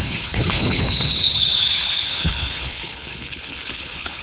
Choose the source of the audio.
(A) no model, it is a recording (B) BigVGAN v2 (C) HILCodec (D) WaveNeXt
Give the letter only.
C